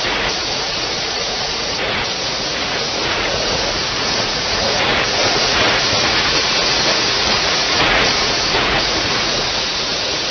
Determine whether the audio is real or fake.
fake